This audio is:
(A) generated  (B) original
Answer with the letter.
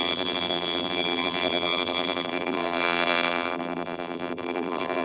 A